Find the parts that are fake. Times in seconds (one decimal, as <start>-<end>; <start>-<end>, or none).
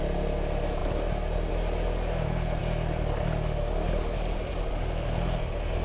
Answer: none